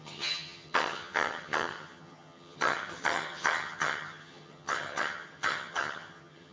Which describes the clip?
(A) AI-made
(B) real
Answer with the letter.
A